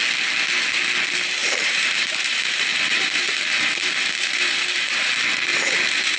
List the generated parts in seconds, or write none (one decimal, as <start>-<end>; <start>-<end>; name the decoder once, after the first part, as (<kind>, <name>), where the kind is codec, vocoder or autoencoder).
1.4-5.1 (vocoder, BigVGAN v2); 5.5-6.2